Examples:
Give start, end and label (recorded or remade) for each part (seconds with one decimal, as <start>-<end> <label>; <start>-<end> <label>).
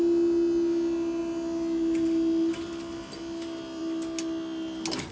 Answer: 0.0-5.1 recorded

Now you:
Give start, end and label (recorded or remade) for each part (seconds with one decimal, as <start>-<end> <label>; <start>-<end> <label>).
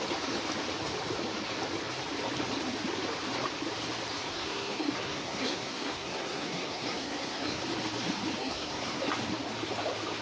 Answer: 0.0-4.3 recorded; 4.3-7.6 remade; 7.6-8.4 recorded; 8.4-9.0 remade; 9.0-10.2 recorded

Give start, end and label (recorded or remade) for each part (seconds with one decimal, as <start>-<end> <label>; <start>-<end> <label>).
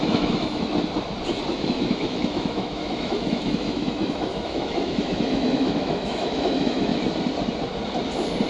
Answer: 0.0-0.7 remade; 0.7-1.5 recorded; 1.5-6.9 remade; 6.9-8.5 recorded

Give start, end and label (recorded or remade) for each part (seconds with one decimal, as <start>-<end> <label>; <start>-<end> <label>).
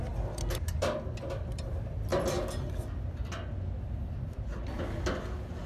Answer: 0.0-5.7 recorded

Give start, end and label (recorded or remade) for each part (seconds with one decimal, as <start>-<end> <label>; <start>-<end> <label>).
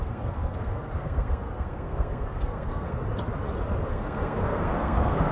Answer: 0.0-3.0 remade; 3.0-3.9 recorded; 3.9-5.3 remade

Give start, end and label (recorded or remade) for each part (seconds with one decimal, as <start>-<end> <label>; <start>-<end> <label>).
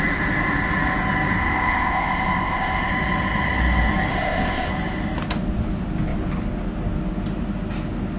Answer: 0.0-1.4 recorded; 1.4-2.9 remade; 2.9-4.1 recorded; 4.1-4.7 remade; 4.7-8.2 recorded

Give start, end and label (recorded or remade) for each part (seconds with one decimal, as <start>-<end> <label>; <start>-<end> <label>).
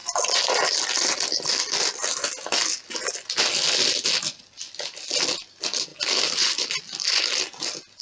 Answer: 0.0-5.9 recorded; 5.9-7.2 remade; 7.2-8.0 recorded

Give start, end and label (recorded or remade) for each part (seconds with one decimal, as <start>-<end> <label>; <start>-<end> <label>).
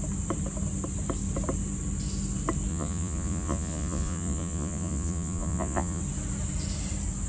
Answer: 0.0-2.7 recorded; 2.7-6.0 remade; 6.0-7.3 recorded